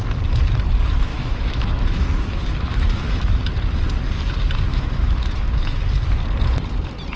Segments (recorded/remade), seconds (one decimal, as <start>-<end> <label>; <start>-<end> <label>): 0.0-1.1 recorded; 1.1-3.4 remade; 3.4-4.7 recorded; 4.7-5.8 remade; 5.8-7.2 recorded